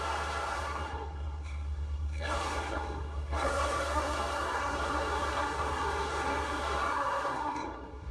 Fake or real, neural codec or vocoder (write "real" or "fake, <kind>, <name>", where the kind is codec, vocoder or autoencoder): fake, codec, SNAC